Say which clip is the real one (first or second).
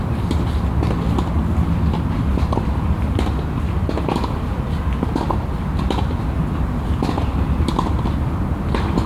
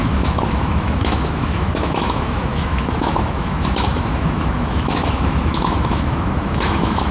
first